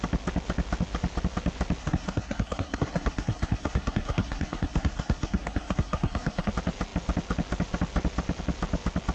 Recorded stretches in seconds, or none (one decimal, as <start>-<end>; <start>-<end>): 0.0-1.8; 6.5-9.1